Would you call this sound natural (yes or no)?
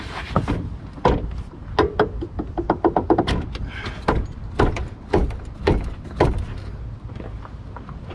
yes